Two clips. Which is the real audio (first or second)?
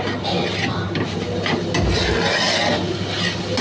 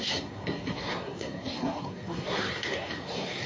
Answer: first